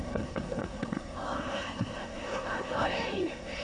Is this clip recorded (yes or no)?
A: no